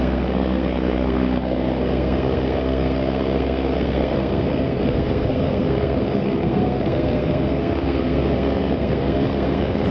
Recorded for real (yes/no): no